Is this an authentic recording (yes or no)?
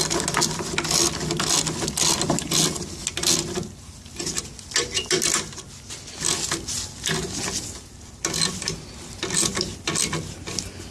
yes